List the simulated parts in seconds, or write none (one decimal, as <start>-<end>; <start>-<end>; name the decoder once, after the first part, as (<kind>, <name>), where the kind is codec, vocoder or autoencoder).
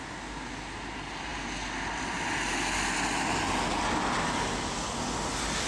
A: none